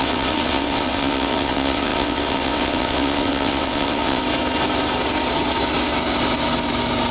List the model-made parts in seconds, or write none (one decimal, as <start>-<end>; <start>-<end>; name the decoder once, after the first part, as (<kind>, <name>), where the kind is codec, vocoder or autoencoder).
0.0-4.2 (vocoder, WaveNeXt)